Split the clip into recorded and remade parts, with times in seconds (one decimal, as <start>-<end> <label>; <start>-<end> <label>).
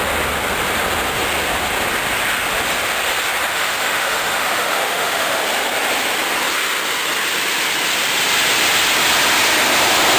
0.0-3.5 recorded; 3.5-5.4 remade; 5.4-10.2 recorded